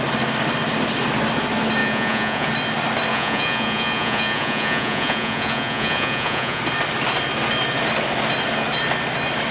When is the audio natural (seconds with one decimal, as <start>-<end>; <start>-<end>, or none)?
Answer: 0.0-1.8; 2.5-3.1; 6.6-9.5